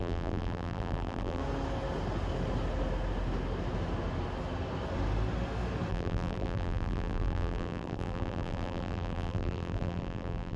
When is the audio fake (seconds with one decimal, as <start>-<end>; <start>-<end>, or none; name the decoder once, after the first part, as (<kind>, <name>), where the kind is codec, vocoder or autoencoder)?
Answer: 0.0-1.4 (vocoder, BigVGAN v2); 5.9-10.6